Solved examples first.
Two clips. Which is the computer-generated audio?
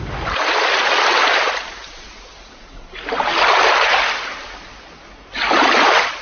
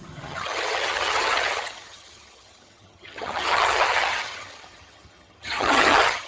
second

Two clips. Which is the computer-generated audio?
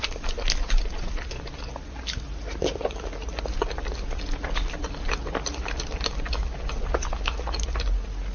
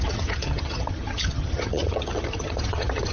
second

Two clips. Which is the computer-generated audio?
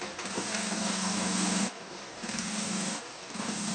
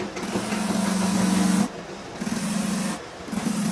first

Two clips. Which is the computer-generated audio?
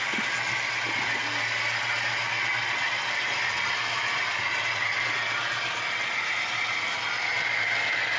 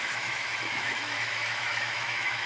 second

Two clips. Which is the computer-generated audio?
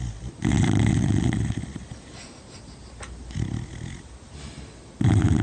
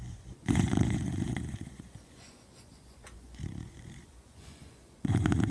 second